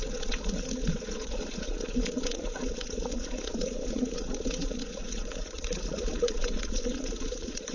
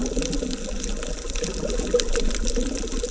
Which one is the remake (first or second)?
first